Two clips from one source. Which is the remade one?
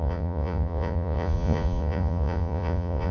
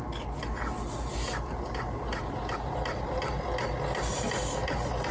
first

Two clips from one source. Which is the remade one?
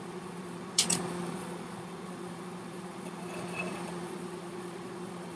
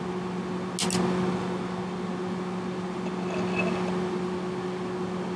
first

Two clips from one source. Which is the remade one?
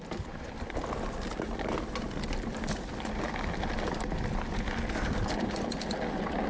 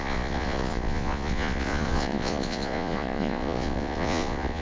second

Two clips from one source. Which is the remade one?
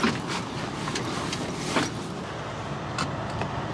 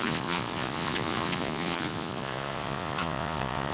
second